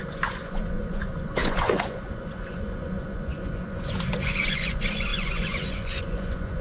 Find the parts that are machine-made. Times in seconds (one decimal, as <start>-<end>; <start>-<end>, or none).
0.0-6.6